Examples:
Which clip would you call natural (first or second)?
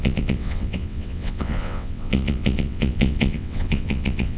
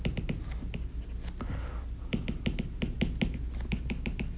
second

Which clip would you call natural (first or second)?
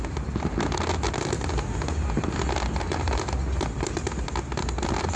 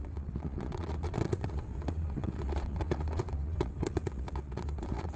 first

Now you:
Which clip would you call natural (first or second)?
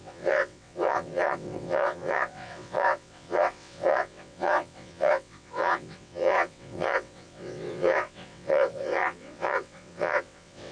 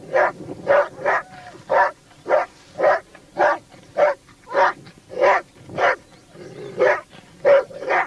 second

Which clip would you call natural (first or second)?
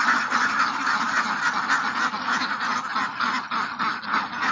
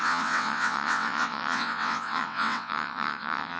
first